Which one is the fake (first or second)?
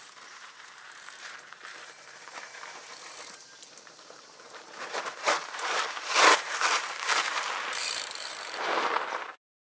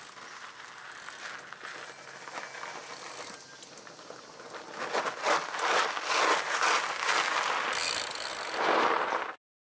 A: first